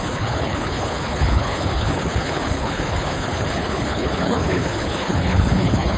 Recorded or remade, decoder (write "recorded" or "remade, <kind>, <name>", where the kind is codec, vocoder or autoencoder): remade, codec, HILCodec